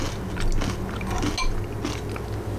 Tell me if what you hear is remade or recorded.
recorded